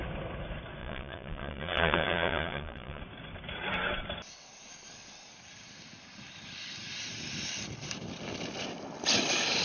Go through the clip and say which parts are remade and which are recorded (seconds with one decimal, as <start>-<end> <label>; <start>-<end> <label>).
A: 0.0-0.8 recorded; 0.8-3.0 remade; 3.0-9.6 recorded